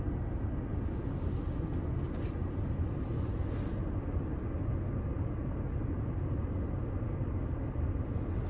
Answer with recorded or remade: recorded